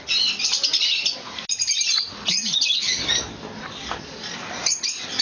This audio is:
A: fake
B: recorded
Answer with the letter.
B